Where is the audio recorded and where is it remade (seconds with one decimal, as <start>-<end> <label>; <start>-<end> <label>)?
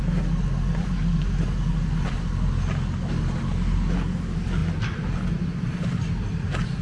0.0-6.8 recorded